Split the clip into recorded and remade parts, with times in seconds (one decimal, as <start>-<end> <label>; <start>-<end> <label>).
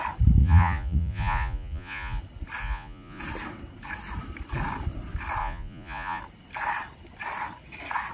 0.0-0.4 recorded; 0.4-2.2 remade; 2.2-2.6 recorded; 2.6-3.2 remade; 3.2-5.4 recorded; 5.4-6.2 remade; 6.2-8.1 recorded